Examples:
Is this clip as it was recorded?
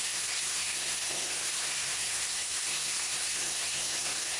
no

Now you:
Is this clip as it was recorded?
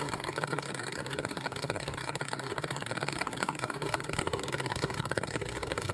no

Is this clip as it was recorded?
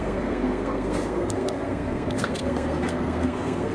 no